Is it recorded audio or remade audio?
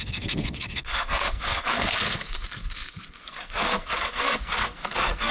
remade